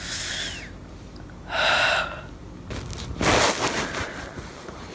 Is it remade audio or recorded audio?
recorded